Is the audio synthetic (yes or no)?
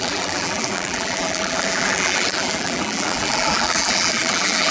yes